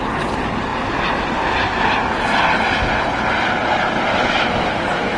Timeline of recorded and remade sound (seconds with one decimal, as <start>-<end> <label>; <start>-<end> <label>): 0.0-4.1 recorded; 4.1-5.2 remade